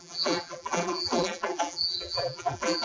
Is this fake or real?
fake